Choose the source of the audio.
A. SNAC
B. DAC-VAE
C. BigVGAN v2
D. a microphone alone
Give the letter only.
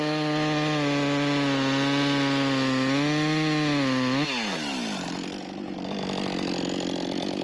D